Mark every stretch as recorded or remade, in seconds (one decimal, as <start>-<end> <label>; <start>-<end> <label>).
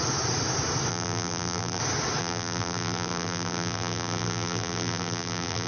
0.0-0.9 recorded; 0.9-1.8 remade; 1.8-2.2 recorded; 2.2-5.7 remade